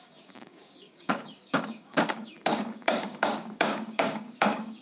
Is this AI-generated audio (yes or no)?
yes